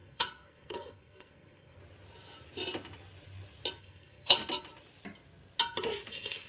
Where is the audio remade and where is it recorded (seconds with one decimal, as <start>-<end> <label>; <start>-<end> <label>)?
0.0-1.8 remade; 1.8-3.8 recorded; 3.8-4.4 remade; 4.4-6.1 recorded; 6.1-6.5 remade